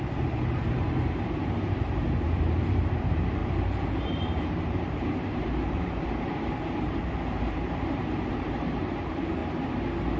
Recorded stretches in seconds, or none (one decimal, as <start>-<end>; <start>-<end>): 9.4-10.2